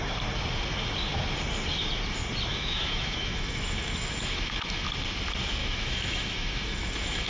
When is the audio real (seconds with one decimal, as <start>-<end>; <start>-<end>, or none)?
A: 0.0-2.5; 4.8-5.6